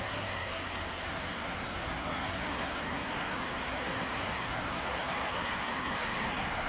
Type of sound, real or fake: fake